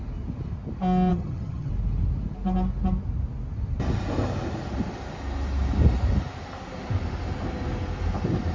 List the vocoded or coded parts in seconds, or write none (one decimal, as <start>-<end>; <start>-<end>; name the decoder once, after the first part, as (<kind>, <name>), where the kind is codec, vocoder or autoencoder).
1.1-1.7 (vocoder, HiFi-GAN)